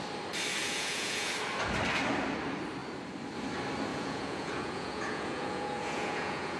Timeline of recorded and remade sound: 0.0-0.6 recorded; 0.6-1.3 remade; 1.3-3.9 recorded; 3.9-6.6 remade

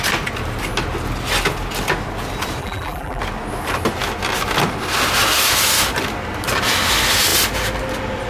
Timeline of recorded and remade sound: 0.0-2.6 recorded; 2.6-3.2 remade; 3.2-8.3 recorded

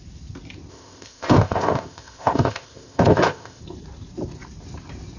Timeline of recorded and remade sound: 0.0-0.7 recorded; 0.7-3.6 remade; 3.6-5.2 recorded

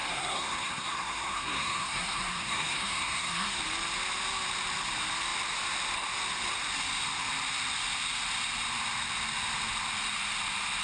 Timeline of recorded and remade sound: 0.0-3.6 remade; 3.6-10.8 recorded

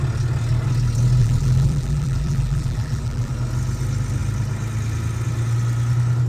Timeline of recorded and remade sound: 0.0-1.2 recorded; 1.2-3.3 remade; 3.3-6.3 recorded

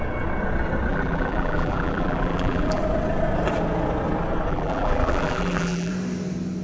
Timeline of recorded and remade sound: 0.0-0.9 recorded; 0.9-2.8 remade; 2.8-4.5 recorded; 4.5-5.9 remade; 5.9-6.6 recorded

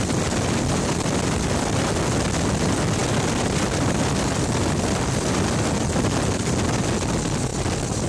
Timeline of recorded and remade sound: 0.0-8.1 recorded

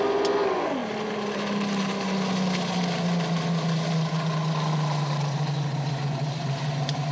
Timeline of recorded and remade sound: 0.0-7.1 recorded